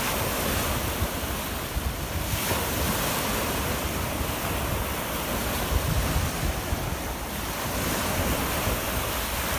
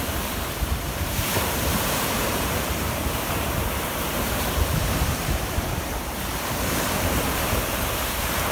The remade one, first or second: second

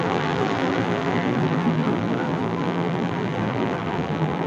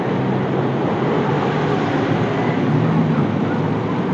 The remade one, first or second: first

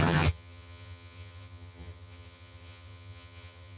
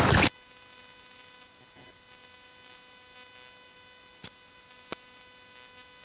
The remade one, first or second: first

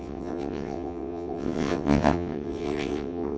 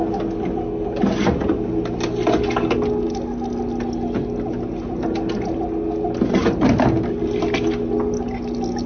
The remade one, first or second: first